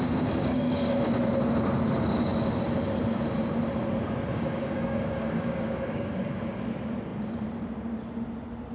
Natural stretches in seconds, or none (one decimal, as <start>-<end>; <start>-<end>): 0.0-0.4; 1.3-4.3; 6.6-8.7